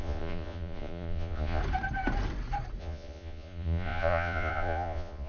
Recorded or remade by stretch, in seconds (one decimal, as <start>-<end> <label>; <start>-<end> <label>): 0.0-1.6 remade; 1.6-2.8 recorded; 2.8-5.3 remade